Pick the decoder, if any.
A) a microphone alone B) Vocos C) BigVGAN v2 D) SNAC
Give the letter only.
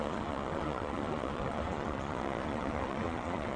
B